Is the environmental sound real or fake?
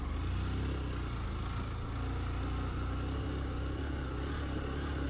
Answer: real